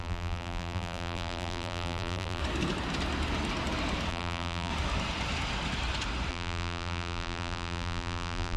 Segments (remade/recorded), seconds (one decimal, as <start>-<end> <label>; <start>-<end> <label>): 0.0-2.4 remade; 2.4-4.1 recorded; 4.1-4.7 remade; 4.7-6.3 recorded; 6.3-8.6 remade